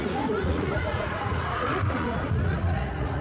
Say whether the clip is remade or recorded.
remade